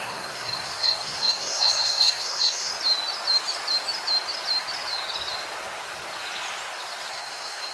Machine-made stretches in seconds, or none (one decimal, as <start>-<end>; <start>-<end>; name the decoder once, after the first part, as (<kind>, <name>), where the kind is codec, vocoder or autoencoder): 0.0-2.7 (codec, SNAC); 7.1-7.7